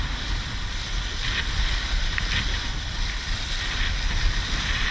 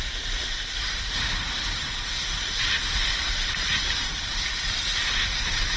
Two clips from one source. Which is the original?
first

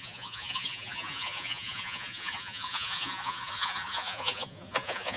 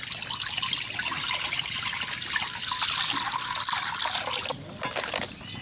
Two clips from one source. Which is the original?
second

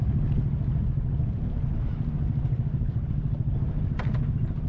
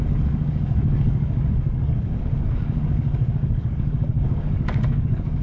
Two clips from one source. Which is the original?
first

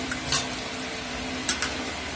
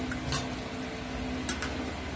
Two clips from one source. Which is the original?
second